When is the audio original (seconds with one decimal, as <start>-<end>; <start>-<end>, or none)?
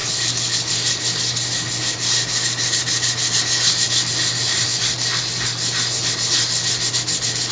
0.7-7.5